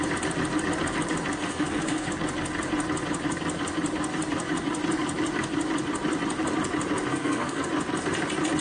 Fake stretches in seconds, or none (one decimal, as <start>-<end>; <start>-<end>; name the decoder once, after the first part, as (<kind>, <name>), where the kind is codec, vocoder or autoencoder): 1.4-2.1 (codec, SNAC); 7.1-7.6